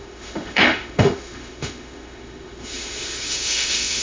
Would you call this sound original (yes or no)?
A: no